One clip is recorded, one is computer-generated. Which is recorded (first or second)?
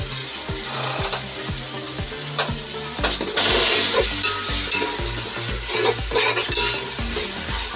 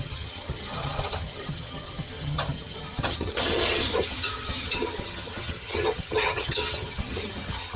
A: first